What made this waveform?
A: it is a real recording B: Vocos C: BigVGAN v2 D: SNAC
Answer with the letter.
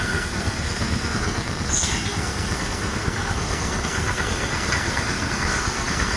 D